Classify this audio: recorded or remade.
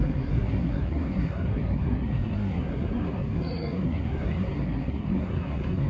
remade